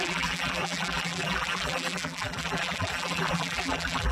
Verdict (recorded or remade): remade